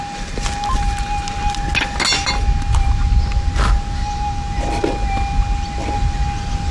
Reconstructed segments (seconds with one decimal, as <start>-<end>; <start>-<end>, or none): none